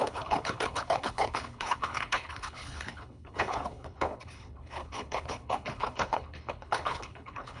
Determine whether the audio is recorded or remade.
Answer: remade